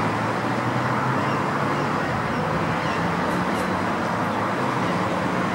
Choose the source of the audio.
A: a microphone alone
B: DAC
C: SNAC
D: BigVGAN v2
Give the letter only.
A